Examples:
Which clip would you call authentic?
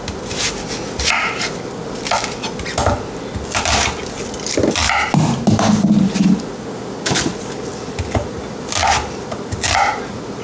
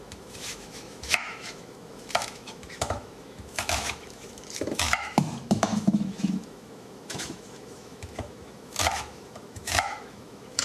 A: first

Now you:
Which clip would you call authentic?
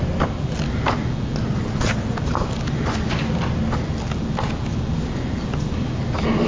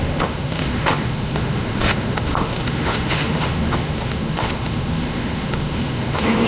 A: first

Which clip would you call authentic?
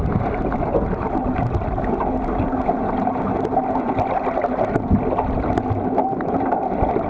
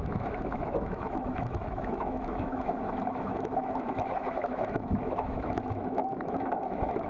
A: first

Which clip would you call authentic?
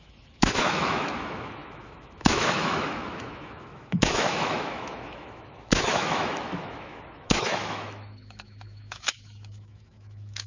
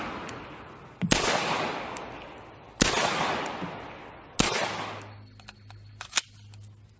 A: second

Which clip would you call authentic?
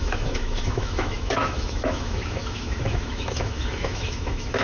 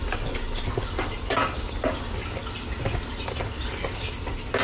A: second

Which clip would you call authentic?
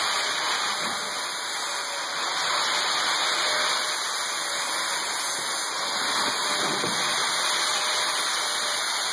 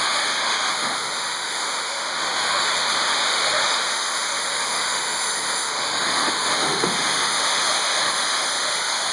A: first